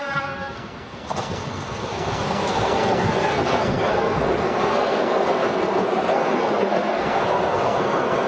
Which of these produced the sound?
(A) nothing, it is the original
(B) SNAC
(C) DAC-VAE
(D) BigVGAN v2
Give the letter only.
B